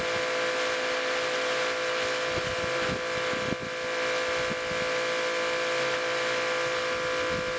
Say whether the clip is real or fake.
real